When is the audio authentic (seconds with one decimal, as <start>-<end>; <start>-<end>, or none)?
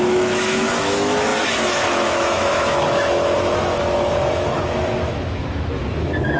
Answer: none